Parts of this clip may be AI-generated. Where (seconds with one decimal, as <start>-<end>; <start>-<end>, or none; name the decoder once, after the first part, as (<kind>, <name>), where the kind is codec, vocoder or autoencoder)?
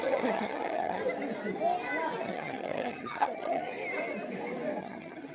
0.0-1.0 (vocoder, HiFi-GAN); 2.2-3.7; 4.8-5.3